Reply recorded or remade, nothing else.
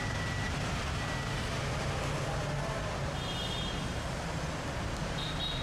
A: recorded